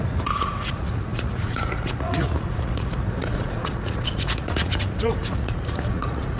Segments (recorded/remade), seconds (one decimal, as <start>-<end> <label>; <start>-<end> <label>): 0.0-6.4 remade